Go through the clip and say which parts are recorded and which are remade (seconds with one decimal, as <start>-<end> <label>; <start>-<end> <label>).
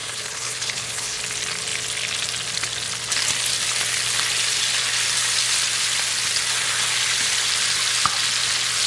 0.0-1.2 remade; 1.2-8.9 recorded